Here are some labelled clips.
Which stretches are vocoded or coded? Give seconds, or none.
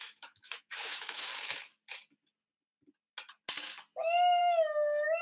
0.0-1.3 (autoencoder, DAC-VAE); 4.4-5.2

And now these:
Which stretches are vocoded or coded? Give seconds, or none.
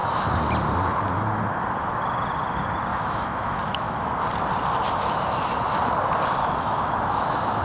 2.9-4.1 (autoencoder, DAC-VAE); 6.4-7.6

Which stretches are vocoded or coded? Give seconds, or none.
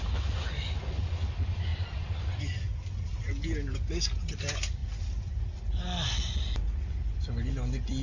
none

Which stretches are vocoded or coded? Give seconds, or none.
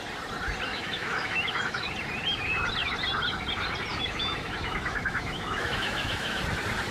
0.7-1.9 (autoencoder, DAC-VAE); 3.9-6.4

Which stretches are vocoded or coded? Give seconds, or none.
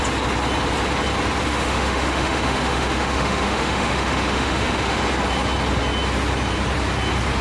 1.5-5.0 (autoencoder, DAC-VAE)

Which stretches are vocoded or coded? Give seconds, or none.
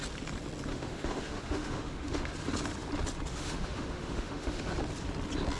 0.7-2.3 (autoencoder, DAC-VAE); 3.3-4.7